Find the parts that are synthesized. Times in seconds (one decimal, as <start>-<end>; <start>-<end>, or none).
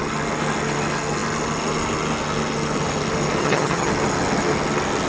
3.4-3.9